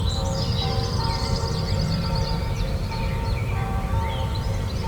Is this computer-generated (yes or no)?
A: yes